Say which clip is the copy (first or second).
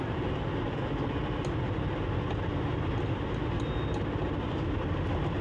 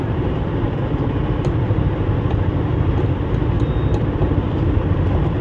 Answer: second